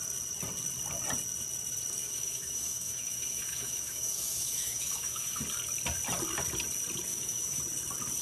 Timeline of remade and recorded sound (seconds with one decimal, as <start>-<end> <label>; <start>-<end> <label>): 0.0-2.0 recorded; 2.0-5.4 remade; 5.4-7.1 recorded; 7.1-7.6 remade; 7.6-8.2 recorded